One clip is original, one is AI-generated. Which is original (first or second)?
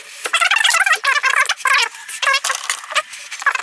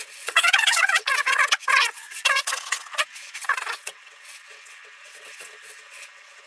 first